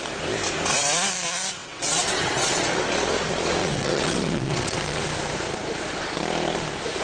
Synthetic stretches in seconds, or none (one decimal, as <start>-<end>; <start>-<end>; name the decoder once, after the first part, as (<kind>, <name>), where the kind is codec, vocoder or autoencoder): 1.6-2.5 (vocoder, WaveNeXt); 3.6-5.0